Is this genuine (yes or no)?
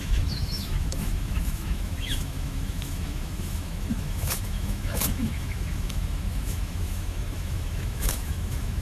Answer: no